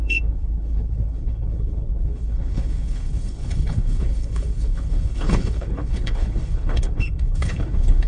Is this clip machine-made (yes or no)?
yes